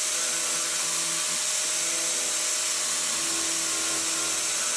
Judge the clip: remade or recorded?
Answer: recorded